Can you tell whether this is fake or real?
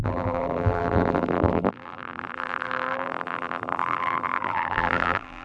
fake